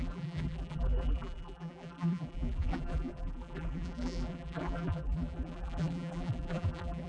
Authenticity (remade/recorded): remade